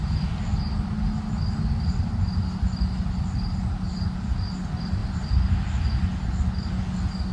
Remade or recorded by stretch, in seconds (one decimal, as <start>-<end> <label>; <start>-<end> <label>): 0.0-7.3 recorded

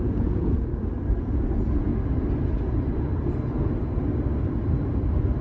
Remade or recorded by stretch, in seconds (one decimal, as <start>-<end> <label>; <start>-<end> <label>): 0.0-0.7 remade; 0.7-1.2 recorded; 1.2-1.9 remade; 1.9-5.4 recorded